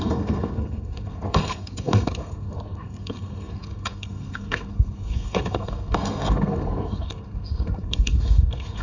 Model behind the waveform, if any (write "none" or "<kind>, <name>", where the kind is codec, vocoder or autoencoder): codec, SNAC